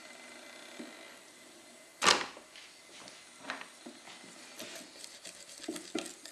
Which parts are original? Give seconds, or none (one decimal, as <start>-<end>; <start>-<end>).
0.0-6.3